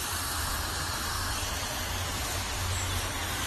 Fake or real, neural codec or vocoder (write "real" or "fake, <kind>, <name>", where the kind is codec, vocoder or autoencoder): real